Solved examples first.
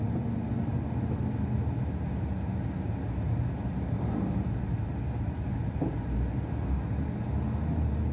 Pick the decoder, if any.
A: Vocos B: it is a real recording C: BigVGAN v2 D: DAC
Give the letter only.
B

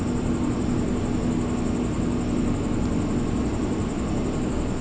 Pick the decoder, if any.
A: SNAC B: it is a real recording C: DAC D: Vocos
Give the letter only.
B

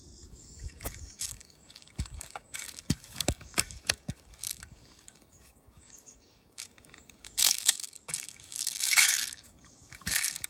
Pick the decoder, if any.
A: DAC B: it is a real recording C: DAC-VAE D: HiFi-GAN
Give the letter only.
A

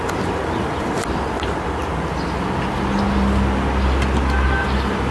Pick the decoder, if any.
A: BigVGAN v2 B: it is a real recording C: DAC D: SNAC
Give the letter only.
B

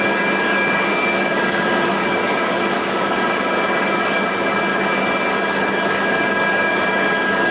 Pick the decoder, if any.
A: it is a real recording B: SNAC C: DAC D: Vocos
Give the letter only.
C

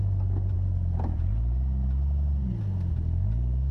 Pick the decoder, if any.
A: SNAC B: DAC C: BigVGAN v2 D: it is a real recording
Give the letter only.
D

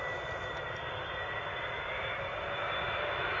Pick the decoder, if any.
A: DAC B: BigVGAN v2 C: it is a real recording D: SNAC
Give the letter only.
C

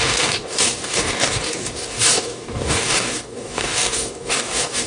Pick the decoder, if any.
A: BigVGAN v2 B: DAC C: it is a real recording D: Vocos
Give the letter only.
B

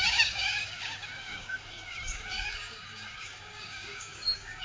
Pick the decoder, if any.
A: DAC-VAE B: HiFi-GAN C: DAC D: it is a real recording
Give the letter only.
C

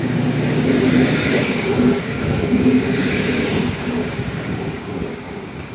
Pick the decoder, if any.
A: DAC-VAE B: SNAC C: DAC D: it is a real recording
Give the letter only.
C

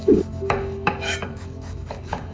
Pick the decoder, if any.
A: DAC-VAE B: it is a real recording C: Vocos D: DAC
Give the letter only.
D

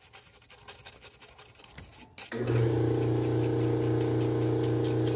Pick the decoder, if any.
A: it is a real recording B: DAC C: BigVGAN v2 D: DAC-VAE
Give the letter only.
A